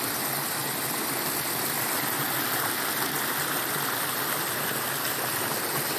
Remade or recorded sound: recorded